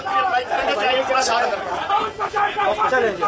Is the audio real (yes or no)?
yes